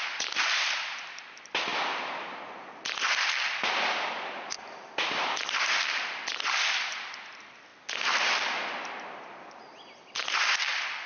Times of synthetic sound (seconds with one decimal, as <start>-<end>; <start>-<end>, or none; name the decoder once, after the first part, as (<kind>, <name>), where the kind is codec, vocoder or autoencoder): none